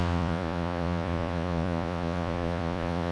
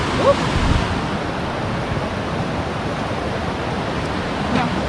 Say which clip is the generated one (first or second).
first